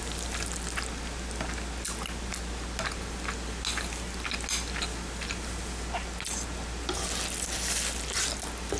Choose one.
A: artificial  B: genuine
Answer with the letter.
B